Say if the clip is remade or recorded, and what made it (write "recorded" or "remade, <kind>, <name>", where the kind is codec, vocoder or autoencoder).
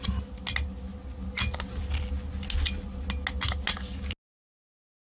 recorded